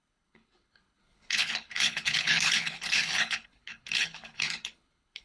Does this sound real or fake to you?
fake